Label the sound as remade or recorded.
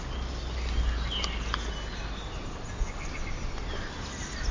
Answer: recorded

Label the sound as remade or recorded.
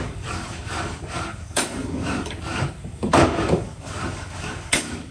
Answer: remade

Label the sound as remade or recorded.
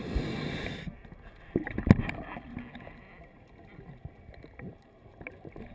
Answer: recorded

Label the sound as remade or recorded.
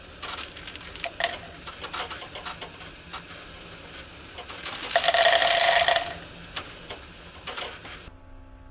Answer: recorded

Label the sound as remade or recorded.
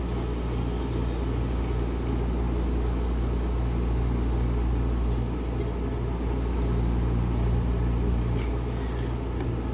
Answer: recorded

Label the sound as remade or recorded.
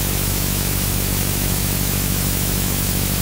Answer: remade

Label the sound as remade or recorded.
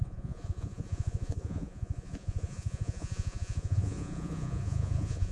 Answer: remade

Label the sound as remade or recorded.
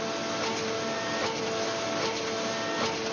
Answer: recorded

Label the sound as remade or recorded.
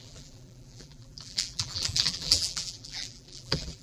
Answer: remade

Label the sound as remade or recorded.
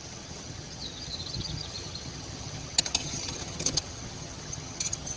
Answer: remade